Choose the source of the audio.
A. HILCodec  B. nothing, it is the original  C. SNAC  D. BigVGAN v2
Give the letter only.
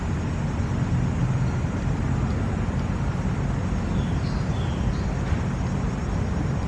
B